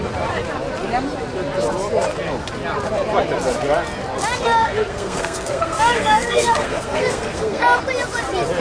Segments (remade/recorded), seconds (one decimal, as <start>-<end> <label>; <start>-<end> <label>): 0.0-4.6 recorded; 4.6-7.8 remade; 7.8-8.6 recorded